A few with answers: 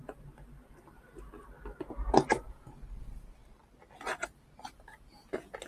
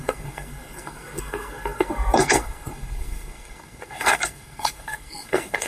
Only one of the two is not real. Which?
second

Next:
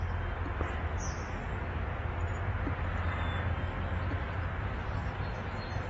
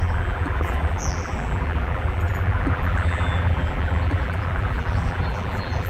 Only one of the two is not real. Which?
second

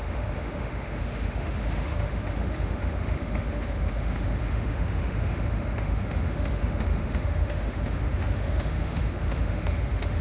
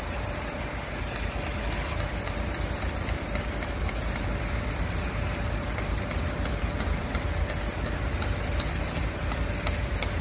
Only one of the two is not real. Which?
first